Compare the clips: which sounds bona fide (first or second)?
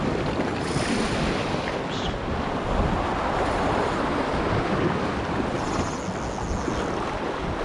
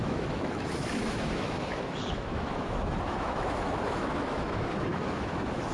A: first